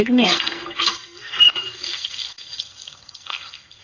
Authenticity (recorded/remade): remade